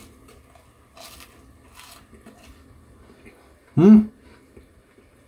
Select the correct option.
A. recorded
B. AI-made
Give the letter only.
A